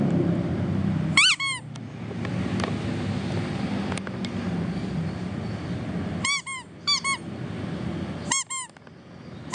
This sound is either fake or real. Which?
real